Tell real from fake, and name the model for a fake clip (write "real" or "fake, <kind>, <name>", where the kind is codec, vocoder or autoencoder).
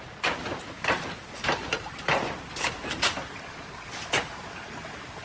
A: real